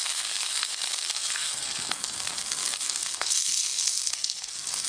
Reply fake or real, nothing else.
fake